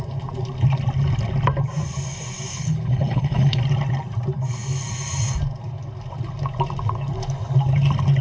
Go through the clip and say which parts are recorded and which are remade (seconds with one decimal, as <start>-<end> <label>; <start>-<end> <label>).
0.0-2.5 recorded; 2.5-3.6 remade; 3.6-8.2 recorded